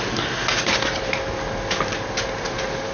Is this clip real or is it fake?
real